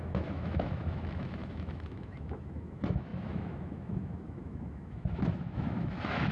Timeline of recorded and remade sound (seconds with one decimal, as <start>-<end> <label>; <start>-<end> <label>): 0.0-6.3 remade